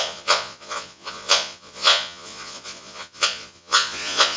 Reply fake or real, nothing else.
fake